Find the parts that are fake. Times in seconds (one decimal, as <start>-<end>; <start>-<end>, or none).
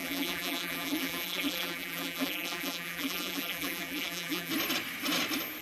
0.0-4.5